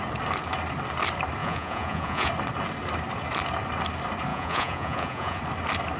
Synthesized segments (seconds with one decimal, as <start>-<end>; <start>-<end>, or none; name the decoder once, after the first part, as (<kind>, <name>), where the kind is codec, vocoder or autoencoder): 1.4-2.3 (vocoder, Vocos); 4.3-5.4